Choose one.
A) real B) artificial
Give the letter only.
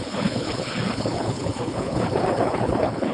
B